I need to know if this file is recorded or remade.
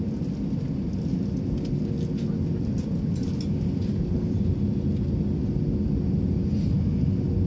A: recorded